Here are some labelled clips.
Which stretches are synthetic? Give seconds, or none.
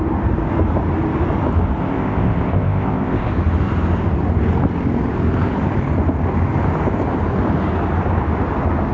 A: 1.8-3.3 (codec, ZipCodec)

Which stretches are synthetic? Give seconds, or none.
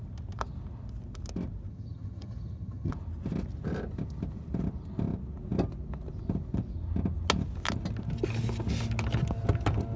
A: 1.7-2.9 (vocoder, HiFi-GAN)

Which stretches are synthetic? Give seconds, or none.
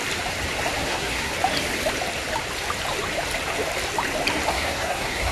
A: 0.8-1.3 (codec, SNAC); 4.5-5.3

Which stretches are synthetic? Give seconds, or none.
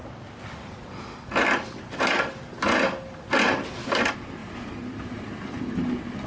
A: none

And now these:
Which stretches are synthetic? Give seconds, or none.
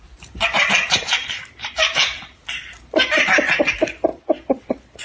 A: 0.0-5.0 (vocoder, BigVGAN v2)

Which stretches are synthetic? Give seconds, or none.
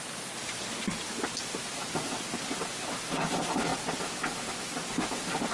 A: none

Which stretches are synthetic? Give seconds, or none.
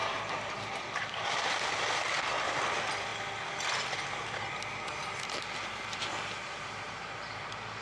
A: none